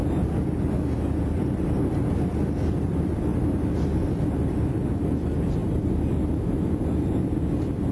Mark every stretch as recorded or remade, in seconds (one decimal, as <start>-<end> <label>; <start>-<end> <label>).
0.0-5.6 recorded; 5.6-6.1 remade; 6.1-7.9 recorded